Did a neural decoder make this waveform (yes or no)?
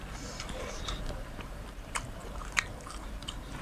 yes